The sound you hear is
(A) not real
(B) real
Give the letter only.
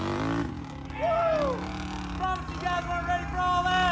B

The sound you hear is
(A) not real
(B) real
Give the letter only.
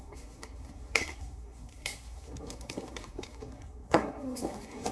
A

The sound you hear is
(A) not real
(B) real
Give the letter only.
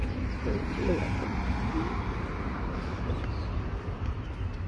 B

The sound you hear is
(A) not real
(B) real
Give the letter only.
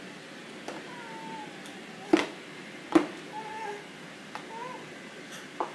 B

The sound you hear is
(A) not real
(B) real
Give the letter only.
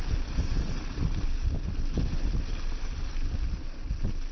B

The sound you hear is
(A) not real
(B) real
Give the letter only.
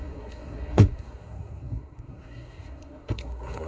A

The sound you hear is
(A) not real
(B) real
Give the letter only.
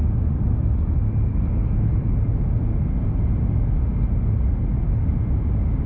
B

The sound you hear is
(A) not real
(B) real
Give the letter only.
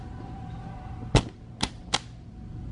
B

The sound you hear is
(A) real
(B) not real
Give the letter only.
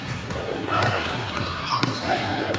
B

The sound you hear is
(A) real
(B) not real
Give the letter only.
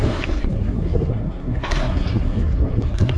B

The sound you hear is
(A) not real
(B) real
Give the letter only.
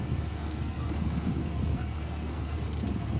A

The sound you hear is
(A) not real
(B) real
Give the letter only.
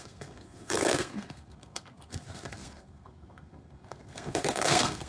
A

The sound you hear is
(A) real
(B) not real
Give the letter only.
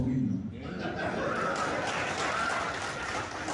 A